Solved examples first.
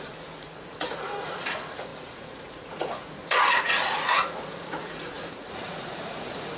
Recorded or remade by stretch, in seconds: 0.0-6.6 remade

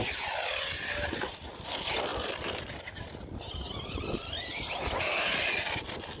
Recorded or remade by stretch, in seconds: 0.0-6.2 recorded

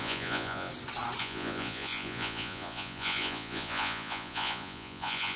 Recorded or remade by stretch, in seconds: 0.0-0.7 remade; 0.7-1.2 recorded; 1.2-5.4 remade

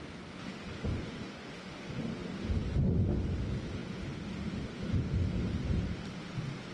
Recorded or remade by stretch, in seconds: 0.0-0.9 recorded; 0.9-2.0 remade; 2.0-6.7 recorded

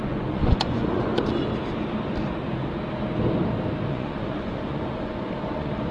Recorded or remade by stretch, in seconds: 0.0-1.3 remade; 1.3-3.9 recorded; 3.9-5.9 remade

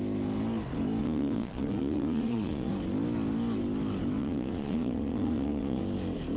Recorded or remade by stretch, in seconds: 0.0-1.0 recorded; 1.0-2.7 remade; 2.7-4.2 recorded; 4.2-5.8 remade; 5.8-6.4 recorded

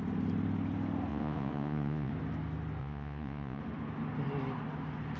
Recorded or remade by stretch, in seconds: 0.0-1.1 recorded; 1.1-2.1 remade; 2.1-2.8 recorded; 2.8-3.6 remade; 3.6-5.2 recorded

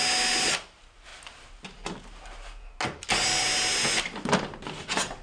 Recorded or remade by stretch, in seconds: 0.0-5.2 recorded